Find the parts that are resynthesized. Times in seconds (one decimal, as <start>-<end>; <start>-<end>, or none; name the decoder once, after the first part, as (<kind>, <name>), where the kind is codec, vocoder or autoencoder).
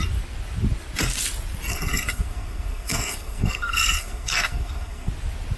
1.7-5.1 (codec, SNAC)